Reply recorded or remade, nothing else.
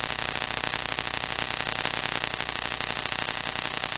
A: recorded